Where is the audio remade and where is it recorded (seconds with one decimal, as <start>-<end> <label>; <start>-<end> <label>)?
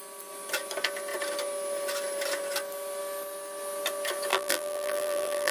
0.0-4.3 recorded; 4.3-5.5 remade